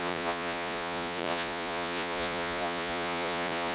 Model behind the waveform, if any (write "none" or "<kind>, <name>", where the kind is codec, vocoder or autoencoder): vocoder, Vocos